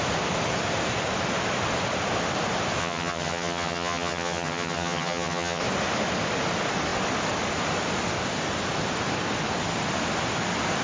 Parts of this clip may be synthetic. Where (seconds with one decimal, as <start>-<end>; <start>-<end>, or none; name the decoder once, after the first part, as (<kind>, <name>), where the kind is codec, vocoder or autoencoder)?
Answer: 2.8-5.6 (vocoder, HiFi-GAN)